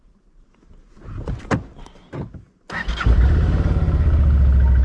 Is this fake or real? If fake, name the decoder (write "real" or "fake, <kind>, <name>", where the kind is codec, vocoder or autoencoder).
real